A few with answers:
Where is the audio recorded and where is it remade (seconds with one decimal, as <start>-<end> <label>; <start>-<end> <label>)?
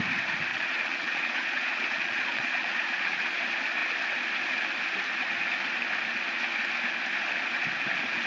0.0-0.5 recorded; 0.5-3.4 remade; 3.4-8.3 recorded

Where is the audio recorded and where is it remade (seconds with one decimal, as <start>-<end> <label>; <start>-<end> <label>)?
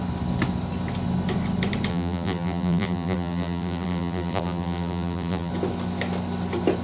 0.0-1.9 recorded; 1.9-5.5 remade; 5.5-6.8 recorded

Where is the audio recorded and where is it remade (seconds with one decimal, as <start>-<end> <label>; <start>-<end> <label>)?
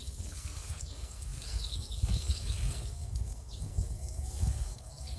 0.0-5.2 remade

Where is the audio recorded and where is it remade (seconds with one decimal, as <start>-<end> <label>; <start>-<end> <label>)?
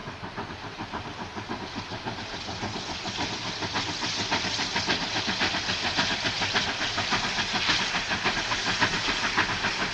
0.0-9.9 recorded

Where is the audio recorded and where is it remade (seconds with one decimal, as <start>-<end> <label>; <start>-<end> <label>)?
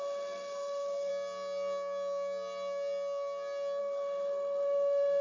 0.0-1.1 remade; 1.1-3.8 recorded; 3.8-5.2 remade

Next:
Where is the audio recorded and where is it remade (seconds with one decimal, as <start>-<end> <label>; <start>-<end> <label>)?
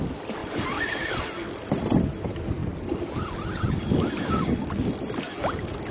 0.0-5.9 recorded